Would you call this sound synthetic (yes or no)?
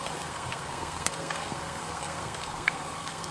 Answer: yes